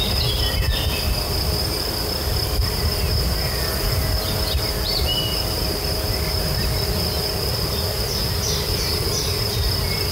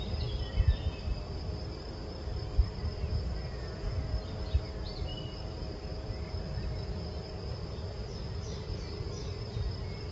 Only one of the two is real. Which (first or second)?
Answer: first